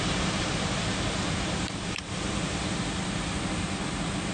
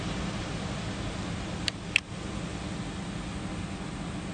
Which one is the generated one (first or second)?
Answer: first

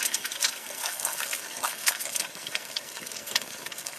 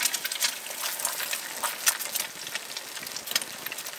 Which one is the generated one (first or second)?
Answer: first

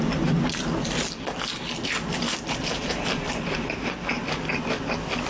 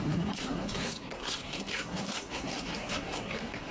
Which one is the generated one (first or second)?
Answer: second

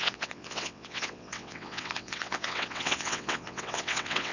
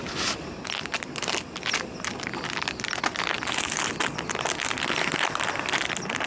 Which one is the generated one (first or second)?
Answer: first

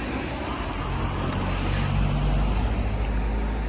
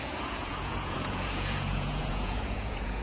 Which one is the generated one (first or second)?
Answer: second